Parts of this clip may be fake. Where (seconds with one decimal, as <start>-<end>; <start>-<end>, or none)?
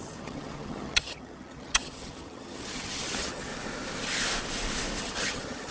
0.0-3.5; 5.0-5.7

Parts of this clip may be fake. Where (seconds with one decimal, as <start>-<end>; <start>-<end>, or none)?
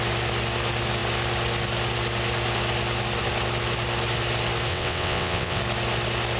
4.7-5.6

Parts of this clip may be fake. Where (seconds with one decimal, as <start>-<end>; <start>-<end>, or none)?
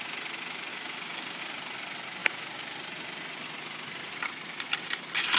0.7-1.4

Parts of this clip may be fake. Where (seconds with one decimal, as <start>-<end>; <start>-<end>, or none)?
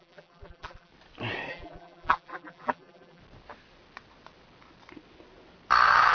0.0-0.9; 1.5-3.2